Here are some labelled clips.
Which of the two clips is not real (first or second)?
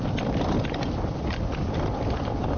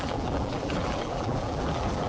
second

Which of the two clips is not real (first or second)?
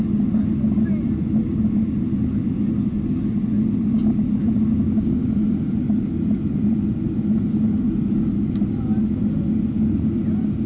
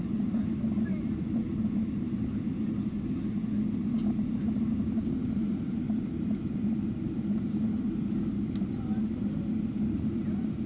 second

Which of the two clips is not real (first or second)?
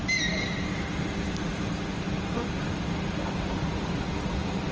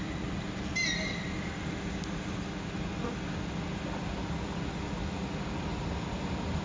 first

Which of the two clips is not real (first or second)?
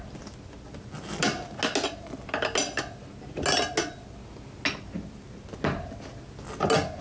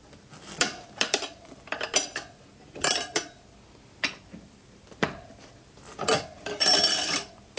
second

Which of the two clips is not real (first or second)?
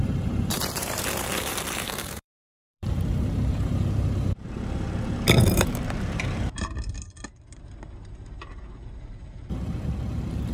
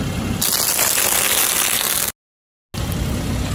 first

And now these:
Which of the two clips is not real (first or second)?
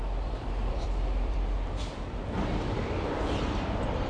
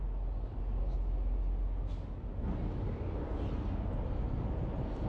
first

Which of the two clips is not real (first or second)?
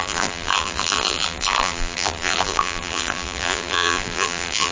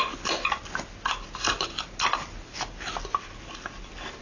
first